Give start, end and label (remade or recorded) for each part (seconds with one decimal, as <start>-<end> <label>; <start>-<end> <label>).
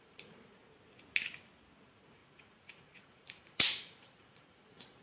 0.0-0.6 remade; 0.6-1.8 recorded; 1.8-5.0 remade